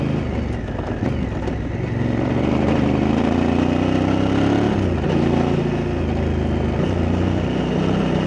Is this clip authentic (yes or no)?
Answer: yes